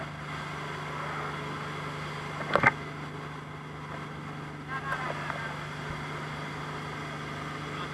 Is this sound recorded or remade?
recorded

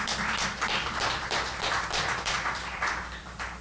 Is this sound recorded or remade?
remade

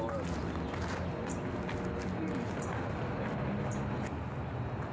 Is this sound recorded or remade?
recorded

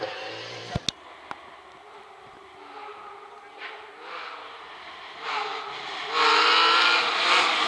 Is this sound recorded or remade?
recorded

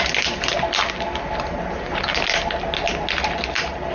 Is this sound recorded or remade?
recorded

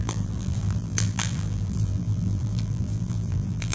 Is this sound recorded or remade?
remade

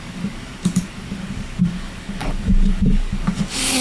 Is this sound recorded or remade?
remade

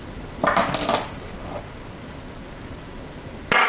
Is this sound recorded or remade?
recorded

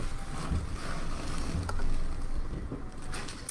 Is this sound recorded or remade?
recorded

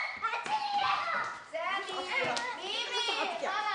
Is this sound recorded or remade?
recorded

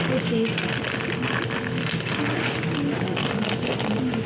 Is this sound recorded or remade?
recorded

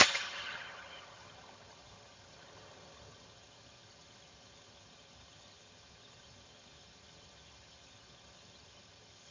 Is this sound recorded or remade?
remade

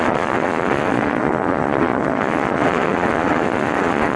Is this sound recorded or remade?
remade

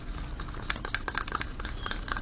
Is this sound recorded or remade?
recorded